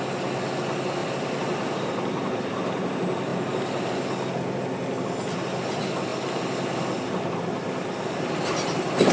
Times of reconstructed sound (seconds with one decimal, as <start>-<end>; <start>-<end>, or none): none